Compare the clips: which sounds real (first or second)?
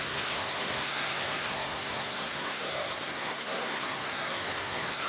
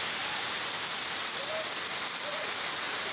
second